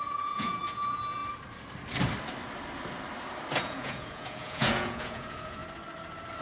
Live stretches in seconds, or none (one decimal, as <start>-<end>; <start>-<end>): 1.2-3.5; 5.6-6.4